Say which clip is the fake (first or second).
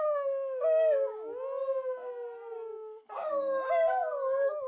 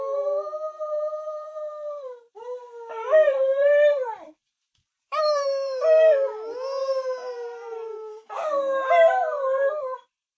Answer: second